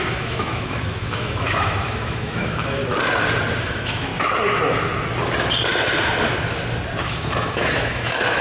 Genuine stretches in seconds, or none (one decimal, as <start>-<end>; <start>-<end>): 2.8-3.6; 4.1-7.0